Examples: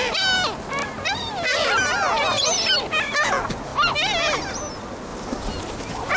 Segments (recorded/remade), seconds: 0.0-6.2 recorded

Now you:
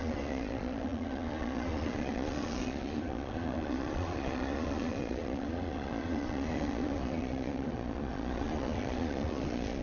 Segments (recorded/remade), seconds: 0.0-9.8 remade

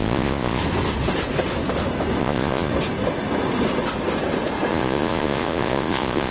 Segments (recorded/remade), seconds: 0.0-0.6 remade; 0.6-2.2 recorded; 2.2-2.7 remade; 2.7-4.7 recorded; 4.7-6.3 remade

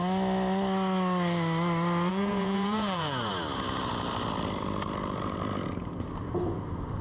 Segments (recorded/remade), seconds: 0.0-2.1 recorded; 2.1-3.3 remade; 3.3-7.0 recorded

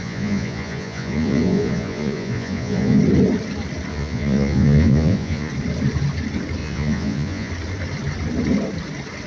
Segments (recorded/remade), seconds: 0.0-3.0 remade; 3.0-3.9 recorded; 3.9-5.5 remade; 5.5-6.6 recorded; 6.6-7.5 remade; 7.5-9.3 recorded

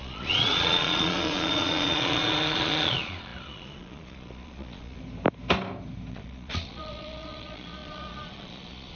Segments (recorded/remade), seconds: 0.0-5.0 remade; 5.0-6.1 recorded; 6.1-9.0 remade

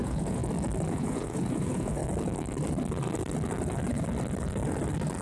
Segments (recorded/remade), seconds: 0.0-0.4 remade; 0.4-0.9 recorded; 0.9-2.0 remade; 2.0-5.2 recorded